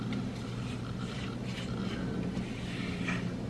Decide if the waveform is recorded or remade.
remade